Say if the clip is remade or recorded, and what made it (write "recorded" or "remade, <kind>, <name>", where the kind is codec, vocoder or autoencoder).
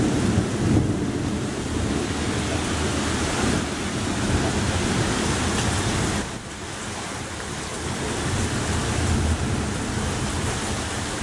recorded